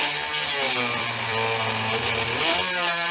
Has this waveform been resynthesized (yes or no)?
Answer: yes